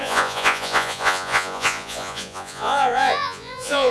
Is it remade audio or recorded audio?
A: remade